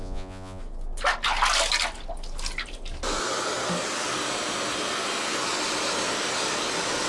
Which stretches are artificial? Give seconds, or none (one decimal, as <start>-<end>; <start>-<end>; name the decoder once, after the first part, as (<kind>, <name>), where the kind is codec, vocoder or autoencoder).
0.0-0.6 (vocoder, Vocos)